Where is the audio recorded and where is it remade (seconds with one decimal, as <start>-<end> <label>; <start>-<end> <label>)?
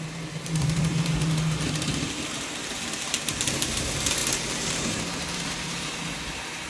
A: 0.0-6.7 remade